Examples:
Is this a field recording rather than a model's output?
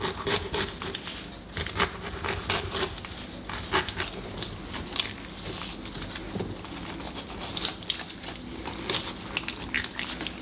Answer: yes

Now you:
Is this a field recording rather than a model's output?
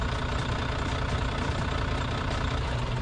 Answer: yes